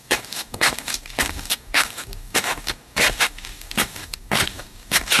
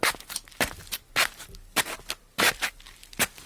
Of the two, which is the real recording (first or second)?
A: second